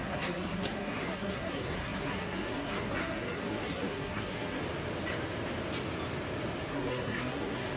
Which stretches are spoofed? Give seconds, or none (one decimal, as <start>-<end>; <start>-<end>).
0.0-4.6; 6.7-7.8